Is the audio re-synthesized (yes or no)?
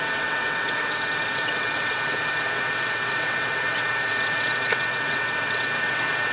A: yes